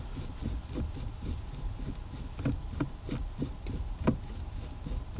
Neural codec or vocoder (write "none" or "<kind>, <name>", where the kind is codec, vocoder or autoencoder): none